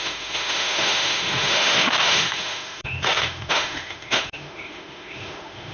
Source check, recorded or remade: remade